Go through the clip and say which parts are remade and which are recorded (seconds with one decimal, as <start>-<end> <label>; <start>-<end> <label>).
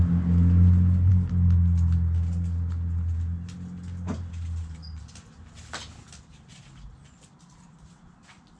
0.0-8.6 recorded